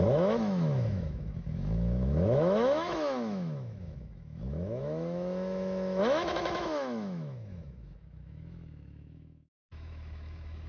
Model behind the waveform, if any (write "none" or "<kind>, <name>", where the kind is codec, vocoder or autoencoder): autoencoder, DAC-VAE